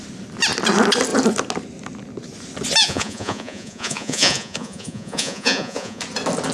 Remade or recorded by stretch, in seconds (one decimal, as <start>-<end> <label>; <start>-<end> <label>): 0.0-2.8 recorded; 2.8-6.0 remade; 6.0-6.5 recorded